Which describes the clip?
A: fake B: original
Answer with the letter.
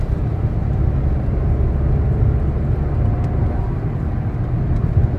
B